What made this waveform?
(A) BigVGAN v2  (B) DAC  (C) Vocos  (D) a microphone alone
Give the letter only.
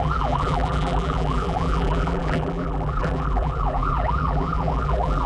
A